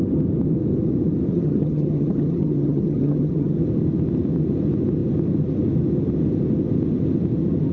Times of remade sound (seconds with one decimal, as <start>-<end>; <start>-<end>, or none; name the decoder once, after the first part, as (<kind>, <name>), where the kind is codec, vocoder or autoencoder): 1.3-3.6 (vocoder, HiFi-GAN)